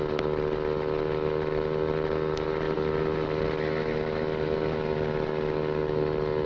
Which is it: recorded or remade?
recorded